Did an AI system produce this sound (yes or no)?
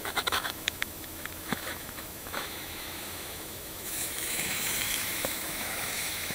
yes